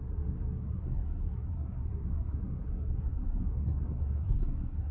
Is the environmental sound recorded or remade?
remade